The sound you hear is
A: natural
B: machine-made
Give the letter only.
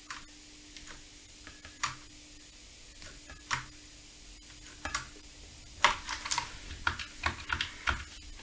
A